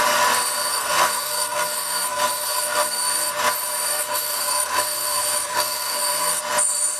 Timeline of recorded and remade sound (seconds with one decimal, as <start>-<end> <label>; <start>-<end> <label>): 0.0-0.7 recorded; 0.7-3.3 remade; 3.3-3.9 recorded; 3.9-6.4 remade; 6.4-7.0 recorded